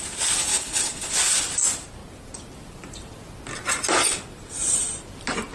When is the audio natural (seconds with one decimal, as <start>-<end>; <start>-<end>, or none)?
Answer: 0.0-0.5; 1.1-5.5